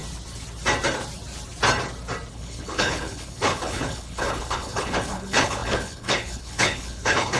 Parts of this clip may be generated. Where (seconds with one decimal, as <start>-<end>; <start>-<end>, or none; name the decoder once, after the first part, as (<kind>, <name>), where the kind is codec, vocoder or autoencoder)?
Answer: 2.3-7.4 (codec, HILCodec)